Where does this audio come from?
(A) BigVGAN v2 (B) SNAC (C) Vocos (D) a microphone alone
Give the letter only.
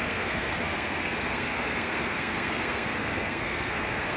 B